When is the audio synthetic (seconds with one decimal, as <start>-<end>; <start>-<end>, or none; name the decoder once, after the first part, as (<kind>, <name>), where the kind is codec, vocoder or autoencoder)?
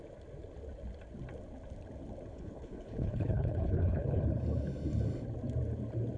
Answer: 2.3-4.2 (codec, HILCodec)